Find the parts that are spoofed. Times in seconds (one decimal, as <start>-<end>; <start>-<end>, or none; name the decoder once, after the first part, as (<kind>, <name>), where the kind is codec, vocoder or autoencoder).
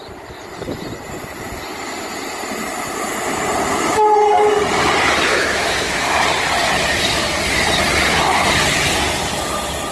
5.3-6.2 (autoencoder, DAC-VAE)